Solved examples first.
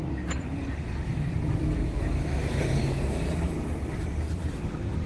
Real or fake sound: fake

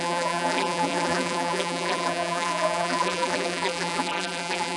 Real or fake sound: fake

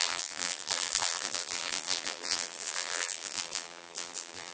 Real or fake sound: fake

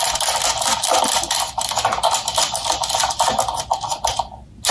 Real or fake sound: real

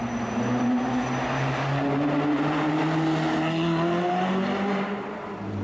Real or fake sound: real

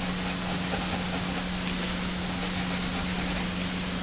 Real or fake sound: real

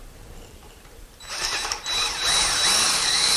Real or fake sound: fake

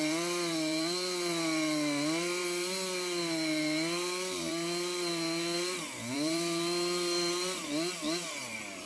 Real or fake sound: fake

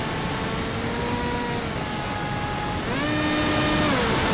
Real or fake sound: real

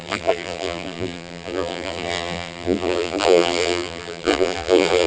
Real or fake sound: fake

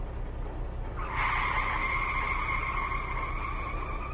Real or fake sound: real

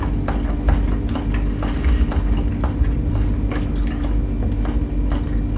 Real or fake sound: real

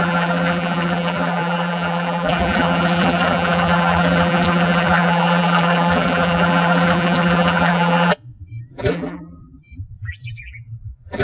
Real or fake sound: fake